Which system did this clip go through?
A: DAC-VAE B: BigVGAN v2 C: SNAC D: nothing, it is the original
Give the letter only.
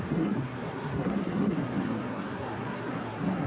C